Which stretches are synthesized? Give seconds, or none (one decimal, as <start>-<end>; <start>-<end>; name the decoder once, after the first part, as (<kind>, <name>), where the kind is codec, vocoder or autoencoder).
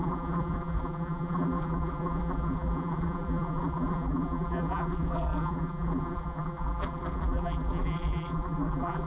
0.0-9.1 (vocoder, BigVGAN v2)